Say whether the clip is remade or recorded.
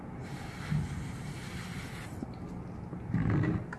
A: recorded